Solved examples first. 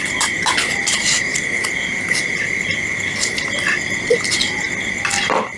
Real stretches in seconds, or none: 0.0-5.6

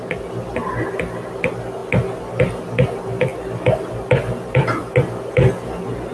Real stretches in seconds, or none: 0.0-6.1

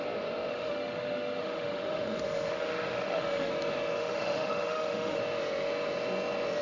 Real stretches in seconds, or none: 0.0-0.5; 3.5-4.0; 5.2-6.6